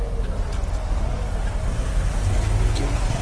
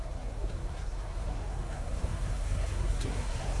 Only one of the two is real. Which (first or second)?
first